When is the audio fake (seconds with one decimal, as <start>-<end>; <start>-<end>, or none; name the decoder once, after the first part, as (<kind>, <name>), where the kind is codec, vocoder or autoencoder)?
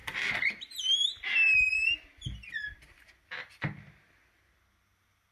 none